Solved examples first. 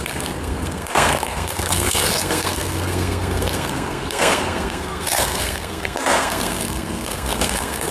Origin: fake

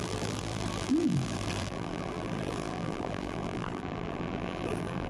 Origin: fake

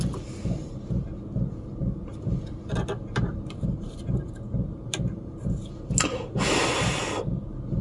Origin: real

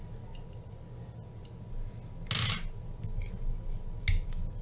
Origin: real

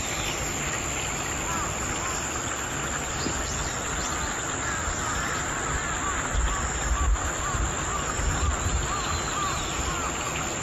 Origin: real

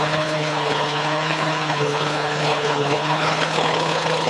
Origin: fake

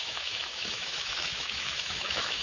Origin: fake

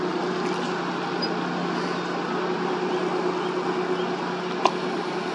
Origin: real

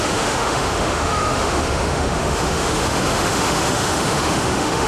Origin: fake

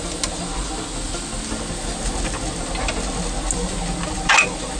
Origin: real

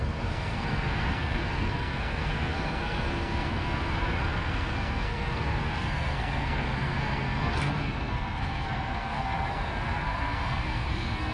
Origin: fake